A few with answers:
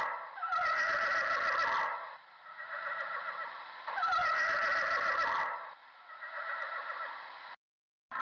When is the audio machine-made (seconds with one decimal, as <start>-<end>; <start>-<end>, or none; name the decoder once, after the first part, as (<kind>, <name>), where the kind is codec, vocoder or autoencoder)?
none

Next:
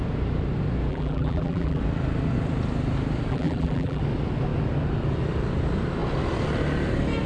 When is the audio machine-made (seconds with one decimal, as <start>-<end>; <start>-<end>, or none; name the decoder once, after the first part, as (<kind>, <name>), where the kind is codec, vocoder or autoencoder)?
0.9-1.8 (vocoder, BigVGAN v2); 3.3-4.0

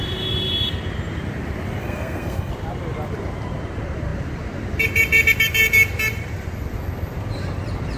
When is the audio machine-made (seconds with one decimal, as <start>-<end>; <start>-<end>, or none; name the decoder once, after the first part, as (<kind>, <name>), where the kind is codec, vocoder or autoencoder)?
1.8-2.5 (codec, SNAC)

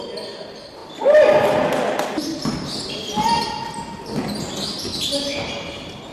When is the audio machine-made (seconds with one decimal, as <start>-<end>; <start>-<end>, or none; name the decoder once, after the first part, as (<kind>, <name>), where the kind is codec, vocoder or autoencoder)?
none

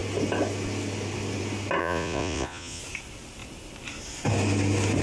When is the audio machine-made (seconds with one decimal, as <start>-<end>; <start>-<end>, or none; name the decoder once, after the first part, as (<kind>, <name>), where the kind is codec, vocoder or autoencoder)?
1.8-2.8 (vocoder, Vocos)

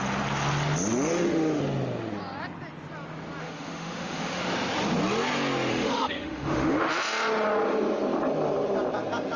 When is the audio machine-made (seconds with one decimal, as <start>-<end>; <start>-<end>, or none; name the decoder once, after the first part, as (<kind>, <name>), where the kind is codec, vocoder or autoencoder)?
1.1-1.6 (autoencoder, DAC-VAE); 3.4-4.4; 5.7-6.9

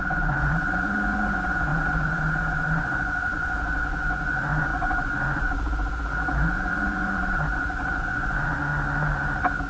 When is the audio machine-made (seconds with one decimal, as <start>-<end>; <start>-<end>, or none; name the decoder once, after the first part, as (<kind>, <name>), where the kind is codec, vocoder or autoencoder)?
0.0-8.6 (vocoder, Vocos)